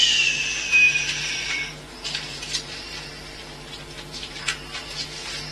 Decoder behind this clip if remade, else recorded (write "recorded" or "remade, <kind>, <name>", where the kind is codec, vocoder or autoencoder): remade, vocoder, BigVGAN v2